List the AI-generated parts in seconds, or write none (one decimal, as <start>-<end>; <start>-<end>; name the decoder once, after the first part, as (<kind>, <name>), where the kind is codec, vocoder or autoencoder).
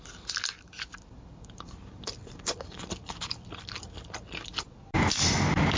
none